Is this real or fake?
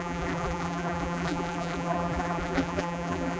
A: fake